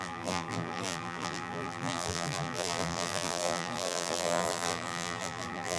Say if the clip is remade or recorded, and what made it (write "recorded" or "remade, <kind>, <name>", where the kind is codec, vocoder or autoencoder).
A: remade, vocoder, BigVGAN v2